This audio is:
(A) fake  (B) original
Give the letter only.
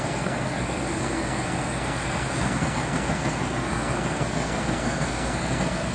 A